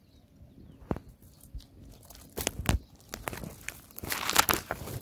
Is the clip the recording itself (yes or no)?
yes